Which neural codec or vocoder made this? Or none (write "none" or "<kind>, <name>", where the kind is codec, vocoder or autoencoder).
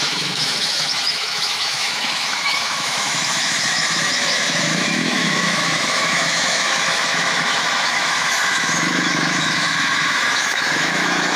autoencoder, DAC-VAE